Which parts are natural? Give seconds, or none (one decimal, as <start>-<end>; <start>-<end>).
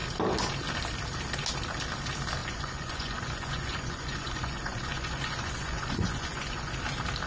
0.0-2.4; 6.7-7.3